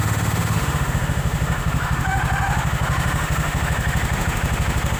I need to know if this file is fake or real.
fake